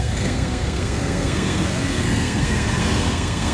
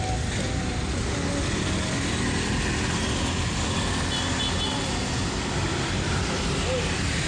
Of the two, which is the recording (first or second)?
second